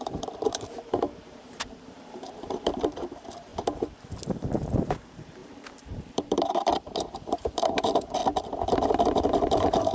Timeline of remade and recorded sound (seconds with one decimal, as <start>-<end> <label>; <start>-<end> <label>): 0.0-3.5 remade; 3.5-4.5 recorded; 4.5-8.2 remade; 8.2-8.7 recorded; 8.7-9.9 remade